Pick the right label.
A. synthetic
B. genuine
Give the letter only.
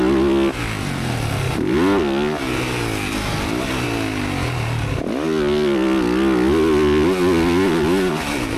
B